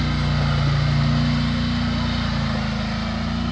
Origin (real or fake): real